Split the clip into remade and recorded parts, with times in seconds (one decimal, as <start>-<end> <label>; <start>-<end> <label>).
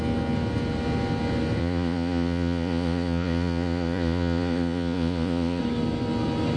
0.0-1.6 recorded; 1.6-5.6 remade; 5.6-6.6 recorded